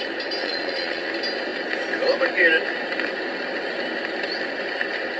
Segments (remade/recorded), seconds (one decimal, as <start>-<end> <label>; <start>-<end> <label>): 0.0-0.4 recorded; 0.4-1.1 remade; 1.1-5.2 recorded